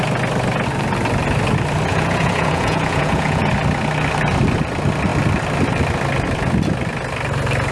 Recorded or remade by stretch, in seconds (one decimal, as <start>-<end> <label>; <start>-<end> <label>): 0.0-1.9 recorded; 1.9-3.5 remade; 3.5-7.7 recorded